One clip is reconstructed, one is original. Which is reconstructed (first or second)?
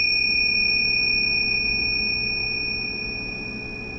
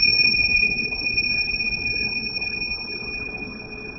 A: second